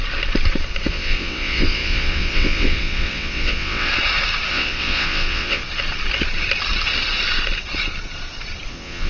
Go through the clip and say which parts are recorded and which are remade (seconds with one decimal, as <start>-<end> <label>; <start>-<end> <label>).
0.0-0.9 recorded; 0.9-3.9 remade; 3.9-4.5 recorded; 4.5-5.6 remade; 5.6-8.7 recorded; 8.7-9.1 remade